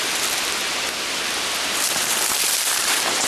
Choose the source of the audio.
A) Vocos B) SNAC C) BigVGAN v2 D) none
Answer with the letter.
C